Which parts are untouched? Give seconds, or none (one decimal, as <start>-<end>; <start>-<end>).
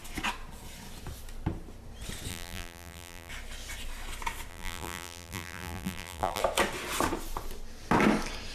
0.0-2.3; 3.3-4.5; 6.4-8.5